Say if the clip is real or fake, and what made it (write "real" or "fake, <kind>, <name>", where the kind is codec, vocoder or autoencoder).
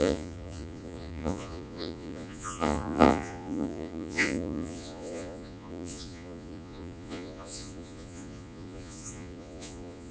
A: fake, vocoder, Vocos